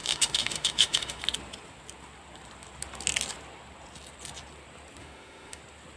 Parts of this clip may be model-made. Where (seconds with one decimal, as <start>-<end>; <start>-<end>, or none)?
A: 0.0-1.2; 5.0-5.6